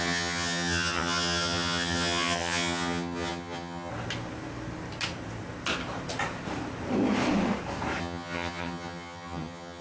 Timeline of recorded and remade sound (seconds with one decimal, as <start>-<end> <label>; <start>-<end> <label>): 0.0-3.9 remade; 3.9-8.0 recorded; 8.0-9.8 remade

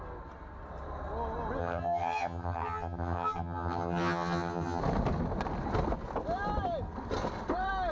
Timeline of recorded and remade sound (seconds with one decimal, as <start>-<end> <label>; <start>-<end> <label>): 0.0-1.6 recorded; 1.6-4.8 remade; 4.8-7.9 recorded

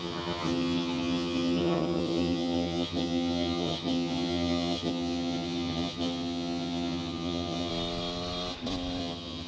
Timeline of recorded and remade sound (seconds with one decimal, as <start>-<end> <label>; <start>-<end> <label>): 0.0-7.7 remade; 7.7-9.0 recorded; 9.0-9.5 remade

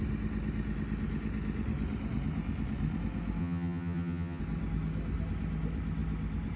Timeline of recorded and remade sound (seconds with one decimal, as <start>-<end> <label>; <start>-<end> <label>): 0.0-3.4 recorded; 3.4-4.4 remade; 4.4-6.6 recorded